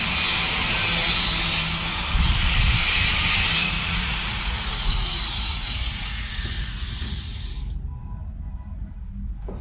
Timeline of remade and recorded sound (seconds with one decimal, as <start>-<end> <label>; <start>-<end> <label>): 0.0-3.6 recorded; 3.6-7.6 remade; 7.6-9.6 recorded